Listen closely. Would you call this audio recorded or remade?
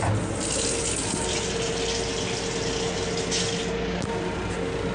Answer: recorded